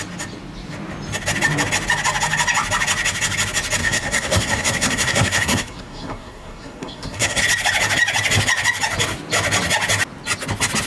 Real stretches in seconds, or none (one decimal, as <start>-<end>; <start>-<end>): 0.0-3.8; 7.4-10.9